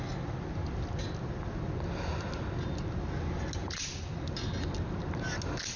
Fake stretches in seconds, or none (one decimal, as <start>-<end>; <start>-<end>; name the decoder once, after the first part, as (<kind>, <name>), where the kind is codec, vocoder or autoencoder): 0.6-1.3 (vocoder, BigVGAN v2); 3.6-5.0